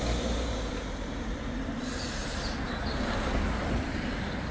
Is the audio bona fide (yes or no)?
no